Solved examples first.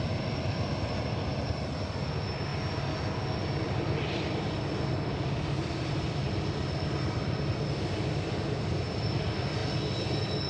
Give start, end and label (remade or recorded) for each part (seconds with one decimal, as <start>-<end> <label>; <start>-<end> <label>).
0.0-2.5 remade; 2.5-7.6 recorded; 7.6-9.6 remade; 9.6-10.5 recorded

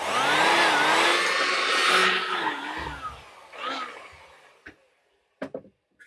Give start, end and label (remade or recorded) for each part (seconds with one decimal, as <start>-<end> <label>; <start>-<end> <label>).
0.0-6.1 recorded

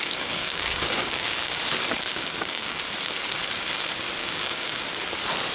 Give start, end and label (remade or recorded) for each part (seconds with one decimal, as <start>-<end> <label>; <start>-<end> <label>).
0.0-1.6 remade; 1.6-2.1 recorded; 2.1-2.8 remade; 2.8-4.2 recorded; 4.2-4.8 remade; 4.8-5.5 recorded

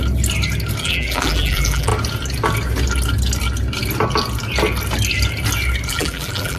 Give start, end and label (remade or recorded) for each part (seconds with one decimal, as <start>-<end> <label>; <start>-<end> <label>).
0.0-0.8 recorded; 0.8-1.9 remade; 1.9-5.9 recorded; 5.9-6.6 remade

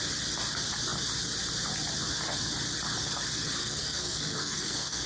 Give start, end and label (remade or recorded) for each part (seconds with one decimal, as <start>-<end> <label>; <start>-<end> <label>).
0.0-3.6 recorded; 3.6-5.1 remade

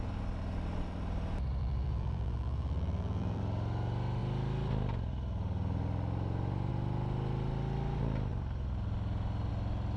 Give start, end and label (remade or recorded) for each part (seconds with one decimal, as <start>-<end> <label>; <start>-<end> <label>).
0.0-1.6 recorded; 1.6-3.4 remade; 3.4-10.0 recorded

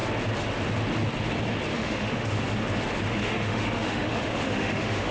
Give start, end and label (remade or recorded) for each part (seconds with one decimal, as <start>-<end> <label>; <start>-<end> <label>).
0.0-1.7 recorded; 1.7-2.3 remade; 2.3-3.2 recorded; 3.2-5.1 remade

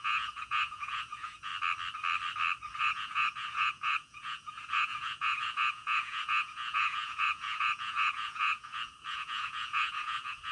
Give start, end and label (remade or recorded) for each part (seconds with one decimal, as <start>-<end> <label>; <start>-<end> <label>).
0.0-1.5 remade; 1.5-2.8 recorded; 2.8-10.5 remade